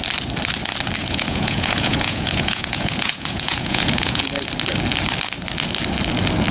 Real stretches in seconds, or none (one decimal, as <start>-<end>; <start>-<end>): 0.0-1.0; 4.2-6.5